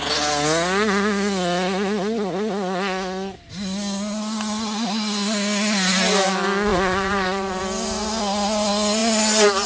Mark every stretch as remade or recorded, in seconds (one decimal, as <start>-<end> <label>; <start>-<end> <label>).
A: 0.0-6.7 recorded; 6.7-7.6 remade; 7.6-9.7 recorded